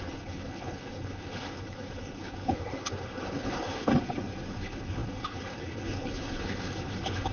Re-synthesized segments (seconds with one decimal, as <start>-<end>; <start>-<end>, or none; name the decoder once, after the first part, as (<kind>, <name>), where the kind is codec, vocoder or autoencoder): 0.0-3.9 (codec, HILCodec); 4.5-7.3

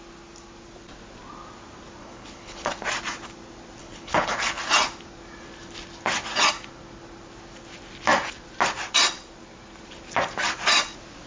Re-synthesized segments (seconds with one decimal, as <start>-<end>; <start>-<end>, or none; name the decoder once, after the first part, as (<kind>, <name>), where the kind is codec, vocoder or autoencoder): 2.0-2.7 (codec, HILCodec); 3.8-4.6